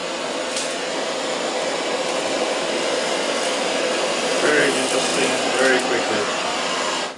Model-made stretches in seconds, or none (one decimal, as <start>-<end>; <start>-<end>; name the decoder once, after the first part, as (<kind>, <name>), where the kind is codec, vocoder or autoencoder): none